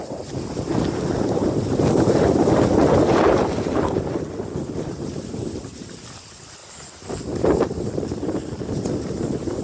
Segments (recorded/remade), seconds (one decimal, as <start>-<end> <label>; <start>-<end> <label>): 0.0-9.6 recorded